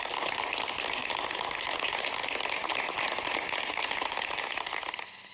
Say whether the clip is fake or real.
real